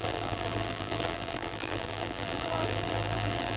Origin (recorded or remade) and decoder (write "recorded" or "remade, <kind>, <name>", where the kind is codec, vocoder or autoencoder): remade, vocoder, BigVGAN v2